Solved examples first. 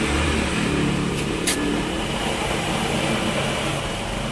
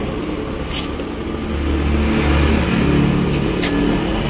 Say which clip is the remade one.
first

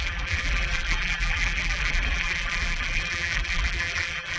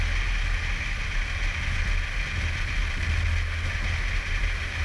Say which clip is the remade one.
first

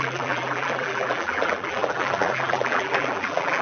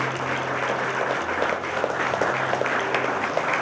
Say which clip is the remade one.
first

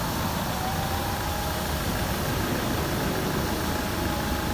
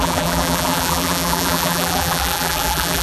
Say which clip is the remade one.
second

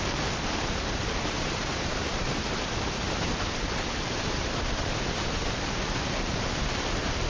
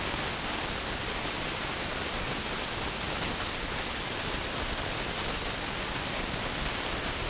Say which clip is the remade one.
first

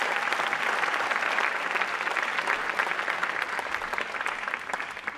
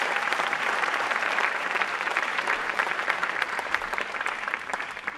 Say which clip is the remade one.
second